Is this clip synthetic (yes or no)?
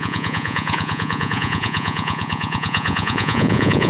yes